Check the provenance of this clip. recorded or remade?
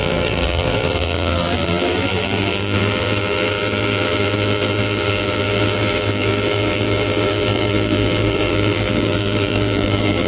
remade